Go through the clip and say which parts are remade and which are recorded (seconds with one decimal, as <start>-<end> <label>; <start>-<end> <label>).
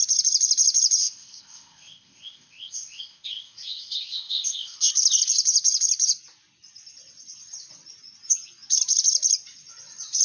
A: 0.0-1.0 recorded; 1.0-4.9 remade; 4.9-10.2 recorded